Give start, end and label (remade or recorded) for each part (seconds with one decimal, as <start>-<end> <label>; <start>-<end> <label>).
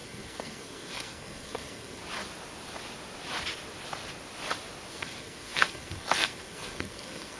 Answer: 0.0-2.0 remade; 2.0-4.9 recorded; 4.9-7.4 remade